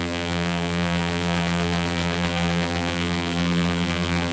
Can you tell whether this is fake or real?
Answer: fake